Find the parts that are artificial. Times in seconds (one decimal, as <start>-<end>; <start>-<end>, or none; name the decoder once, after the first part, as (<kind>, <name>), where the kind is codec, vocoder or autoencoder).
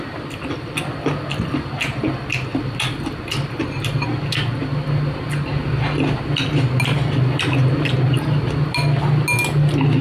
none